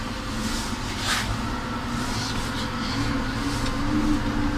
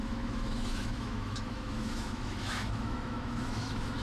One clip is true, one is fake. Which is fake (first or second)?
second